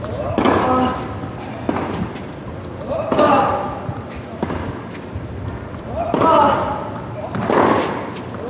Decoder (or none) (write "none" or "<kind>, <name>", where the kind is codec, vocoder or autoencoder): none